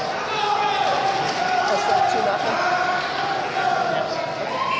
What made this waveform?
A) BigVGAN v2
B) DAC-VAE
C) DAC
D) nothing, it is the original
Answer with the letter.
D